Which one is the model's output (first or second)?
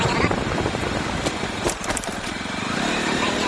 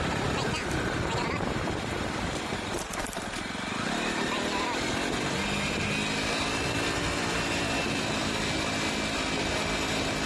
first